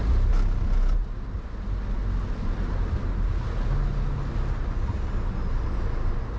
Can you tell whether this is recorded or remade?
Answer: recorded